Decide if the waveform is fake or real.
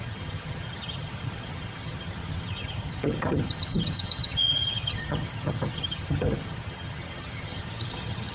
fake